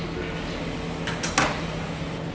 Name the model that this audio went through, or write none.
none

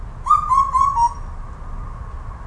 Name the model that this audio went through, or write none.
none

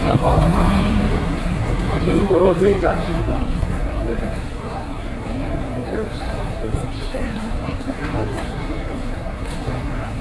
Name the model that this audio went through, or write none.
codec, SNAC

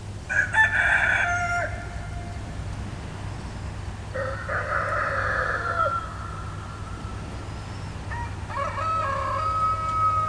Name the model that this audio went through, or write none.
none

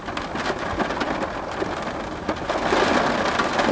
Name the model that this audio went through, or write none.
none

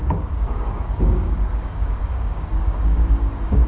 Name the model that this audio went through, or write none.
codec, DAC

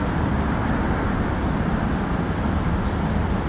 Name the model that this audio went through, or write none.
none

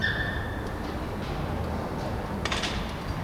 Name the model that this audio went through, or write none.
none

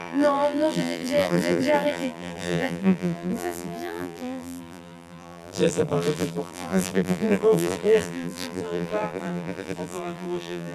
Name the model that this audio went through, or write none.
vocoder, BigVGAN v2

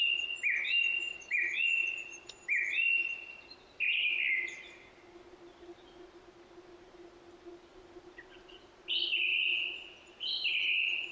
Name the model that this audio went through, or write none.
none